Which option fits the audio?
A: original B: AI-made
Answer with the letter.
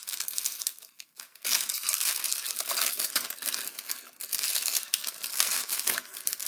B